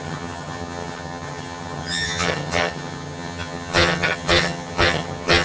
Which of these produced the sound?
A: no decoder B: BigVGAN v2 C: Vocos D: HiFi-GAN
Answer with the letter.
D